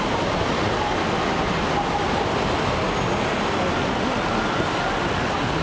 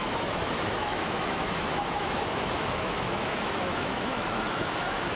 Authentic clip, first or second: first